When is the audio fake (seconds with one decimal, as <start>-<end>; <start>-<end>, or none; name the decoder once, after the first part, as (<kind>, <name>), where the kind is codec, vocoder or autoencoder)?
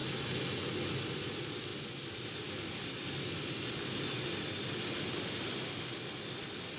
none